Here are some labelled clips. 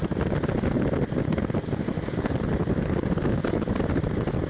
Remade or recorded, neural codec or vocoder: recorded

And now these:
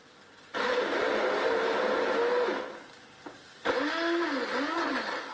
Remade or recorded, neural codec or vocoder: recorded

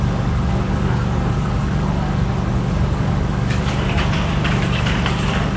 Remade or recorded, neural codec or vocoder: remade, codec, DAC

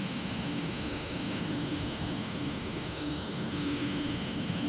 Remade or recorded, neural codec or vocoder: remade, autoencoder, DAC-VAE